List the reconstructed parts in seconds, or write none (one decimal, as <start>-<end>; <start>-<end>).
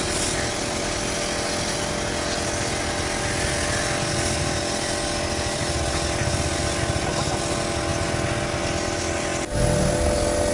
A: none